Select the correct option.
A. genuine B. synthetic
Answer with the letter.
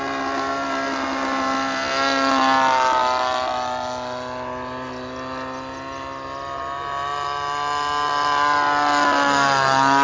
A